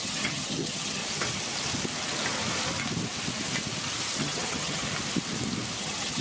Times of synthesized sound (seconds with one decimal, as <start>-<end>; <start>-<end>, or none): 0.0-1.0; 4.1-4.8; 5.8-6.2